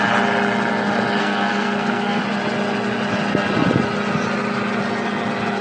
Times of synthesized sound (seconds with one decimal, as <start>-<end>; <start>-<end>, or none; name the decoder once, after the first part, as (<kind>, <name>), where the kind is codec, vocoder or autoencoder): 1.2-2.2 (codec, SNAC)